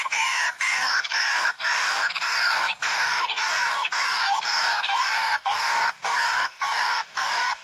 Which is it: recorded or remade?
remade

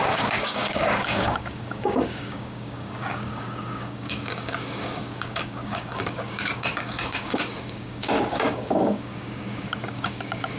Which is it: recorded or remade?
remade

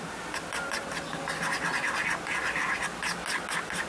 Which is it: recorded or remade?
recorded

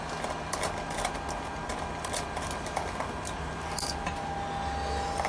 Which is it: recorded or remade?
recorded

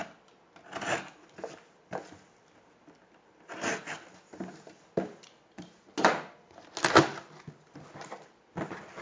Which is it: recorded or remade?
recorded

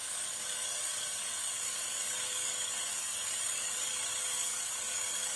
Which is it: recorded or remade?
remade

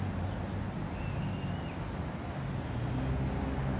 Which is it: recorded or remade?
recorded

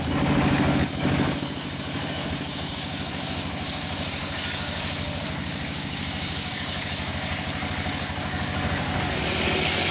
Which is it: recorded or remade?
remade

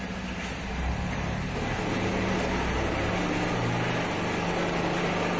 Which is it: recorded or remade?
recorded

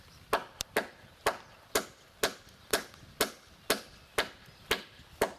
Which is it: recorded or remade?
recorded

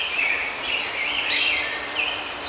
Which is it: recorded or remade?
recorded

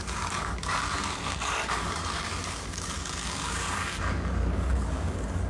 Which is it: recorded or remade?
remade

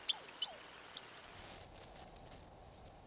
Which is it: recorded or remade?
recorded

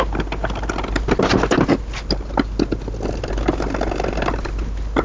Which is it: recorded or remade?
recorded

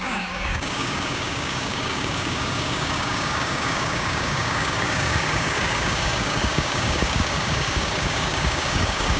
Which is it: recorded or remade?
remade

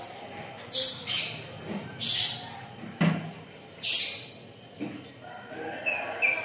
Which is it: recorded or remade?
recorded